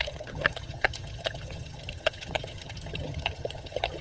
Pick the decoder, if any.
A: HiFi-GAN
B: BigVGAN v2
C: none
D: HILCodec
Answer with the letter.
A